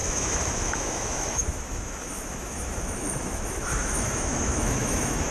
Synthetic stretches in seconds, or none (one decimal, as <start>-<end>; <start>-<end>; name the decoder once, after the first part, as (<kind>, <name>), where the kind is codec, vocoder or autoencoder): 0.0-5.3 (autoencoder, DAC-VAE)

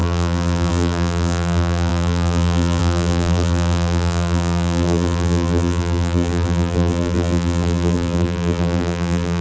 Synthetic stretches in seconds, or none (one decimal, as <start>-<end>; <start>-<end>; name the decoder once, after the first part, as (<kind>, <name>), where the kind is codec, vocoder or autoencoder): 0.0-9.4 (vocoder, BigVGAN v2)

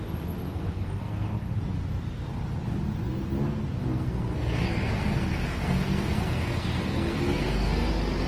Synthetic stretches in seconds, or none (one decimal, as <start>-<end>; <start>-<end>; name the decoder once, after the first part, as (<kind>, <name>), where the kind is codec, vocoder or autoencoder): 0.5-1.5 (codec, SNAC); 3.8-7.9

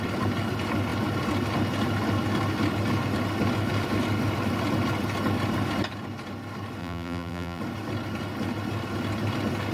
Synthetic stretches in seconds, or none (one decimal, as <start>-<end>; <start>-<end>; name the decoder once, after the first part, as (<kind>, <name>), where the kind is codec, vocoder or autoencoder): 6.8-7.6 (vocoder, BigVGAN v2)

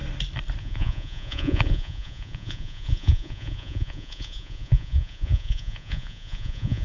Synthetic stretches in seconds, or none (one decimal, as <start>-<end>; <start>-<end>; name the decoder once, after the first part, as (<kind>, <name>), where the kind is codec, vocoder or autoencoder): 0.6-6.8 (vocoder, Vocos)

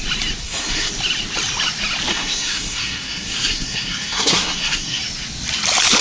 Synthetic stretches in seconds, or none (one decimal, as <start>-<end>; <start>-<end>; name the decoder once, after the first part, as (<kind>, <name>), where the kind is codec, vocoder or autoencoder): 0.4-0.9 (codec, SNAC); 2.1-5.0

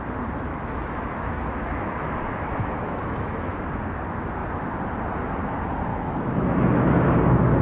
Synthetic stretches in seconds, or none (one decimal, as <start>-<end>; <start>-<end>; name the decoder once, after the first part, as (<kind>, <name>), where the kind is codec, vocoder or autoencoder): 0.5-3.6 (autoencoder, DAC-VAE); 5.9-6.9

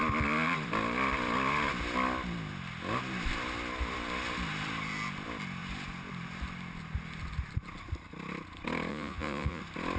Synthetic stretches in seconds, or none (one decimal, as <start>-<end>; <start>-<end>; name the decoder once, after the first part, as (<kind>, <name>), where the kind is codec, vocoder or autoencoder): 8.9-9.6 (vocoder, Vocos)